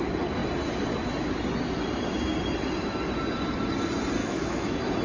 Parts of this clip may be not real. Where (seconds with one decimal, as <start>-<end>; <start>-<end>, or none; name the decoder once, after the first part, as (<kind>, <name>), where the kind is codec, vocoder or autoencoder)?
4.2-5.0 (autoencoder, DAC-VAE)